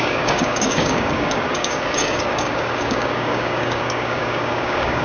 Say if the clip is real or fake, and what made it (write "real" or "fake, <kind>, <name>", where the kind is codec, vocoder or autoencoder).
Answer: fake, codec, DAC